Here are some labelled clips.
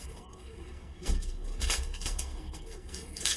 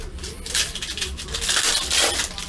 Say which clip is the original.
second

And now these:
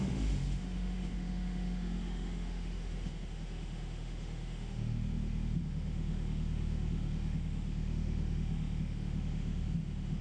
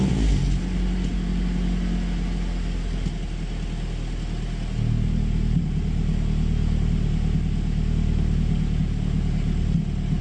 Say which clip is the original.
second